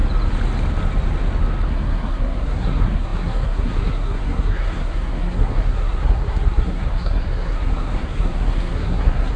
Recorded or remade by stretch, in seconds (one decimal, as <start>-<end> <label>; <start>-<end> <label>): 0.0-1.7 recorded; 1.7-9.4 remade